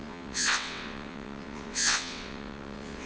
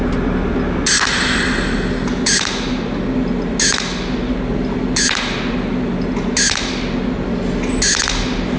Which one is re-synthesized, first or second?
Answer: first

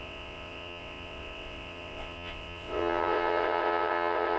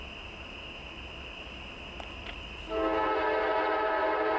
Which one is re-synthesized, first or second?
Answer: first